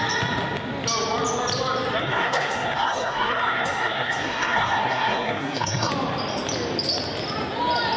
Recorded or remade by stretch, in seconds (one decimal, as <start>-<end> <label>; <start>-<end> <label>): 0.0-2.0 recorded; 2.0-5.9 remade; 5.9-8.0 recorded